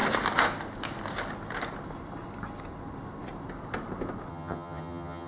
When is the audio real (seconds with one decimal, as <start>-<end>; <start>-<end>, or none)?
0.0-4.3